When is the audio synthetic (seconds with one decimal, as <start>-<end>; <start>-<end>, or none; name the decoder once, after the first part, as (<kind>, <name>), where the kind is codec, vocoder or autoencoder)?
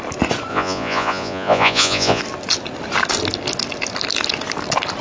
0.5-2.2 (vocoder, Vocos)